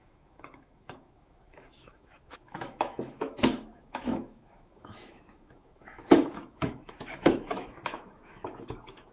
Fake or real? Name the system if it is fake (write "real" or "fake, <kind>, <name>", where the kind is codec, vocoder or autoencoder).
fake, autoencoder, DAC-VAE